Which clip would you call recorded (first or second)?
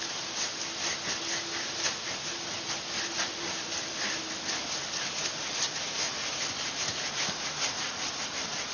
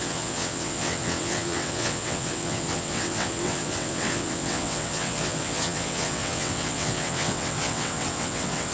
first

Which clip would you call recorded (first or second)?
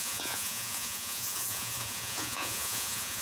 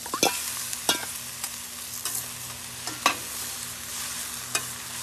second